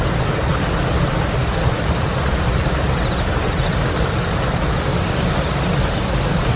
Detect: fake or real real